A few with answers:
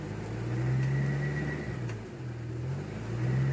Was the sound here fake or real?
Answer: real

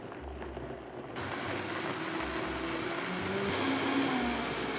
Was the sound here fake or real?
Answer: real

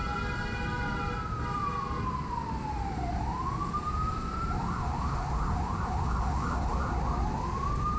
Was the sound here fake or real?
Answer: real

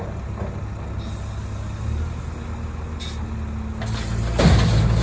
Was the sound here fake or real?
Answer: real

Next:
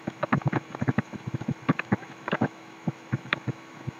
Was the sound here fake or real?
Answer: fake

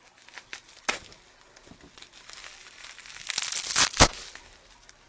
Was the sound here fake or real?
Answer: real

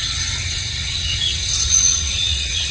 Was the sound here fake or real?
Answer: fake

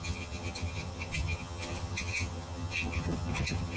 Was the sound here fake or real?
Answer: fake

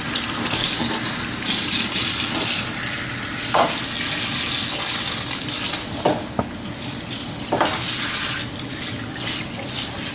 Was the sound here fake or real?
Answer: real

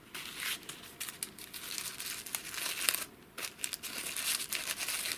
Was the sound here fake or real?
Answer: real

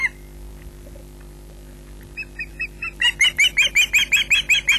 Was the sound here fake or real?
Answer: real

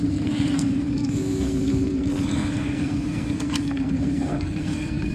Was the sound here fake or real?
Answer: fake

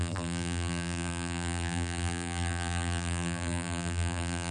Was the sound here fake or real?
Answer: fake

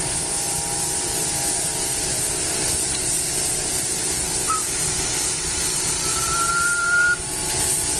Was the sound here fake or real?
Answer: real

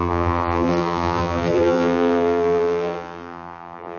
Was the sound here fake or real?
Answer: fake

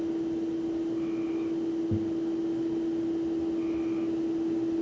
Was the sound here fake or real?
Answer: real